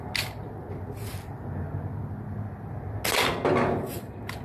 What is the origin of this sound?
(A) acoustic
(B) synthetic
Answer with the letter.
A